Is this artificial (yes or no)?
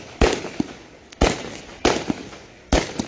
no